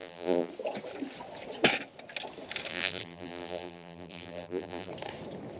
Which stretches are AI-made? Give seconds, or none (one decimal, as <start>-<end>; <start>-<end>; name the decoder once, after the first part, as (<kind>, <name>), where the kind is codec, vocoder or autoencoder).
0.0-0.5 (vocoder, BigVGAN v2); 2.7-4.9